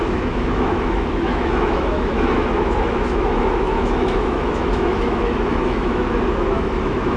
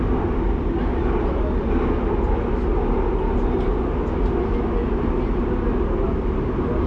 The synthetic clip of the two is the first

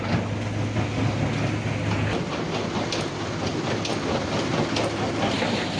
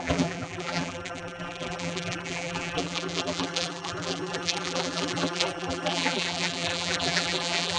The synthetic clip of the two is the second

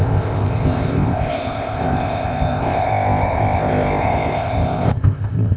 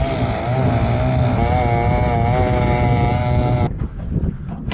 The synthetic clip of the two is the first